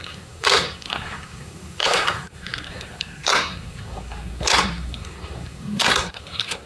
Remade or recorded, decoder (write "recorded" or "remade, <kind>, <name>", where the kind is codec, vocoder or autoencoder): remade, codec, SNAC